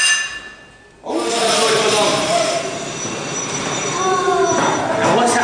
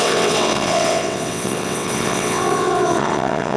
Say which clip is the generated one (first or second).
second